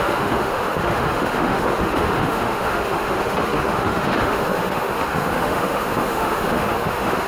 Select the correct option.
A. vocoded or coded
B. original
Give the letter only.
A